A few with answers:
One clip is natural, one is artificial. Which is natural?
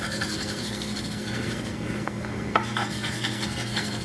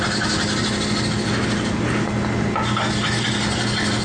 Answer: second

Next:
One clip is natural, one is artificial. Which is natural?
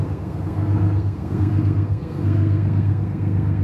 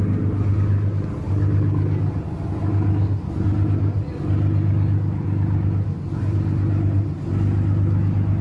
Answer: second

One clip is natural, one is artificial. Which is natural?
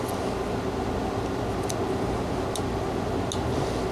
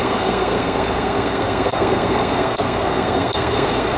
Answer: first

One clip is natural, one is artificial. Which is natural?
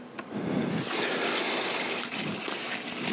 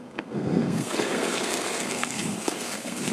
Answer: first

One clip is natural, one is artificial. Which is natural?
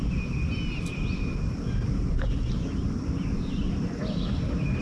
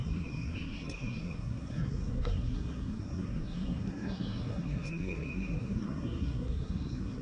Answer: first